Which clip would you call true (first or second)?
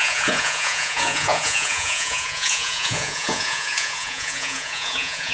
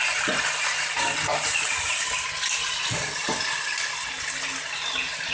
second